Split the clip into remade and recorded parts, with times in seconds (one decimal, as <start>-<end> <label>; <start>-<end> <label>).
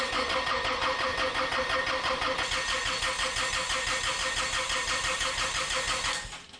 0.0-4.8 recorded; 4.8-5.6 remade; 5.6-6.6 recorded